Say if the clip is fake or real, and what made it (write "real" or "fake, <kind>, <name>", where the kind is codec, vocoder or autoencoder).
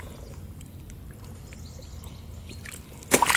real